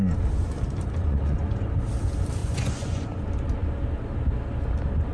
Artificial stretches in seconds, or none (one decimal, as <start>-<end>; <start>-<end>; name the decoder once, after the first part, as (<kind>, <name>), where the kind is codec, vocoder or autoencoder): 1.0-1.7 (vocoder, Vocos); 2.4-3.2